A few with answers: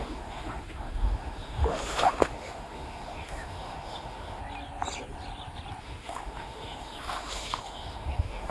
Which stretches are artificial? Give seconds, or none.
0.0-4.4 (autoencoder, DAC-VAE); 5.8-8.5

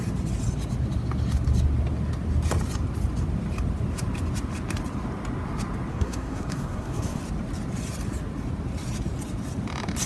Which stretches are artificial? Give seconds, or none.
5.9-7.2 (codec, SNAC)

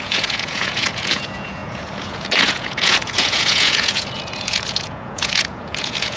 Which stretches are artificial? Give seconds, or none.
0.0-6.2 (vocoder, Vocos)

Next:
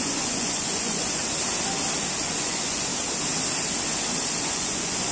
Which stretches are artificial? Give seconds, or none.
0.0-1.2 (vocoder, Vocos); 2.2-2.9; 4.4-5.1